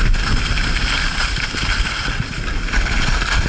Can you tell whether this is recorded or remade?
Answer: recorded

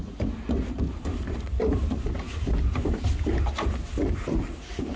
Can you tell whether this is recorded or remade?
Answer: recorded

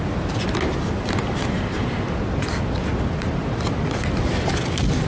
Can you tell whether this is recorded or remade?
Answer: recorded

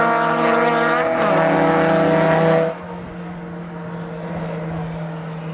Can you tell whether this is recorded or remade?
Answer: recorded